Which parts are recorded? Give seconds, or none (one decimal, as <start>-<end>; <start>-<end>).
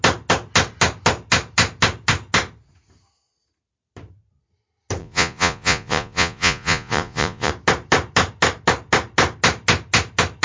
0.0-5.0; 7.5-10.4